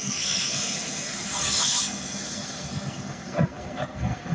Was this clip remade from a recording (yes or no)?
yes